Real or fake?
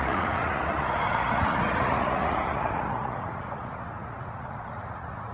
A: fake